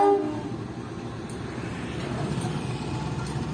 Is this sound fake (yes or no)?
no